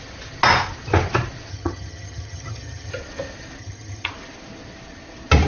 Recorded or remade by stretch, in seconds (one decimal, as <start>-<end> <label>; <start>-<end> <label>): 0.0-1.5 recorded; 1.5-2.9 remade; 2.9-3.6 recorded; 3.6-4.1 remade; 4.1-5.5 recorded